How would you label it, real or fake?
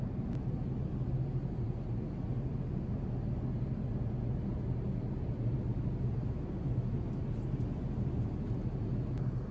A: real